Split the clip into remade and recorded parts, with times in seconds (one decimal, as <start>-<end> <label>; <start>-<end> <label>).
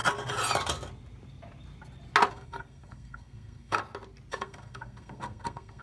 0.0-2.3 recorded; 2.3-3.8 remade; 3.8-4.3 recorded; 4.3-5.8 remade